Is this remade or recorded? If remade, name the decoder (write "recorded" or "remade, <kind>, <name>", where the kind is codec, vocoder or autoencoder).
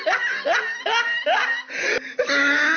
recorded